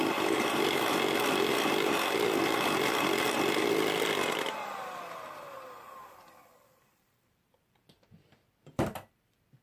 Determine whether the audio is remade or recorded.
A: remade